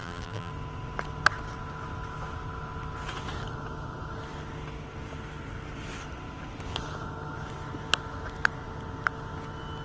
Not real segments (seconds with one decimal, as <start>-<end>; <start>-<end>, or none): 0.0-0.5